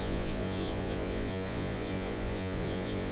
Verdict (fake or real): fake